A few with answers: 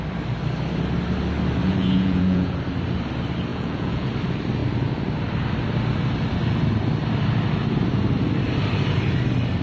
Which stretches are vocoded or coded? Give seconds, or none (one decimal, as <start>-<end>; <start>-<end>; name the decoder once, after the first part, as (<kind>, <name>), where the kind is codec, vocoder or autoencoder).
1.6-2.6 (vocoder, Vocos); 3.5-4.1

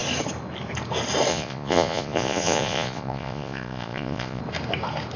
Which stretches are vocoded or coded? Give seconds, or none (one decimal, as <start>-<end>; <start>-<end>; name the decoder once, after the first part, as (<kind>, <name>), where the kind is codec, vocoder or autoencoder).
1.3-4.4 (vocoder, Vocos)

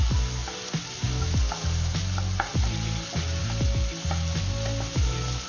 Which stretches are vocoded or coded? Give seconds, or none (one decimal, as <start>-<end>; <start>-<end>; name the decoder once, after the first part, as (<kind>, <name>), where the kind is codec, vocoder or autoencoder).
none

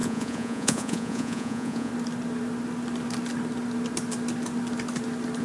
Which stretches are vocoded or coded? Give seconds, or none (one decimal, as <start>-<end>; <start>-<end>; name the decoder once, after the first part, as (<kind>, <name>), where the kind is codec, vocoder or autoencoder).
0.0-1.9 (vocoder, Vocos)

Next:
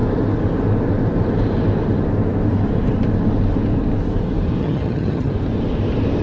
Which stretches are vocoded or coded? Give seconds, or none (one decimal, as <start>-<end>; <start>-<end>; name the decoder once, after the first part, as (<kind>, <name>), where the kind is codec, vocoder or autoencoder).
4.6-5.3 (vocoder, HiFi-GAN)